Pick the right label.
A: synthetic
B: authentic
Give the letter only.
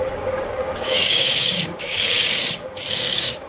A